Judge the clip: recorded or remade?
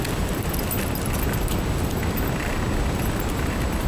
remade